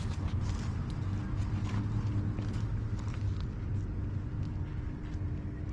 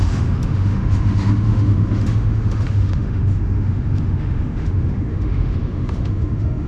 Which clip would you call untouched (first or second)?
first